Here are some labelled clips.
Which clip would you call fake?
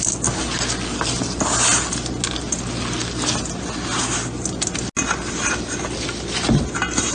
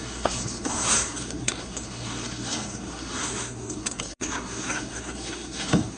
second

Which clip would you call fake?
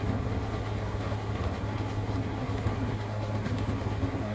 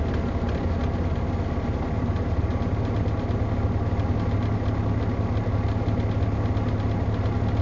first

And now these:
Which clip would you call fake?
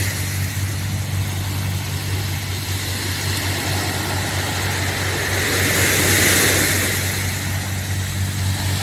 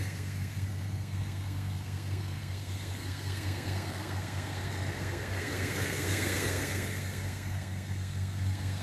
second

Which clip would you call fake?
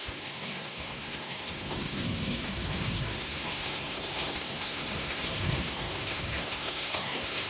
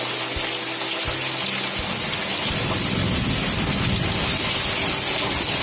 first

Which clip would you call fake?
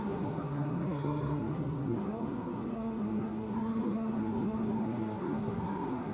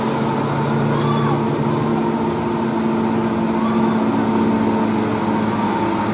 first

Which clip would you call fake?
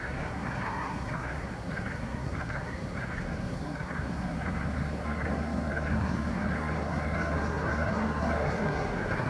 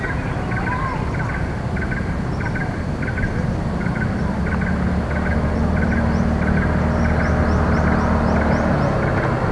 first